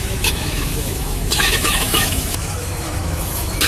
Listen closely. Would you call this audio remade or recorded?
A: remade